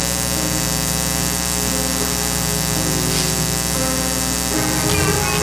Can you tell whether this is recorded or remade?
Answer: recorded